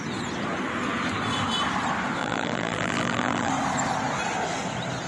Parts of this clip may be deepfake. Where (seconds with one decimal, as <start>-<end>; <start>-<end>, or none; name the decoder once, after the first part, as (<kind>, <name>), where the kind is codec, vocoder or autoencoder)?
2.2-3.5 (vocoder, BigVGAN v2)